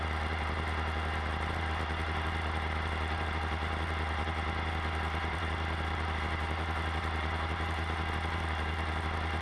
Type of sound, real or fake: fake